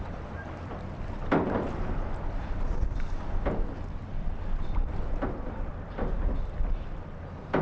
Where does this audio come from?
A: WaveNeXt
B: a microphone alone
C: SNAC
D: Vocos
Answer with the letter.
B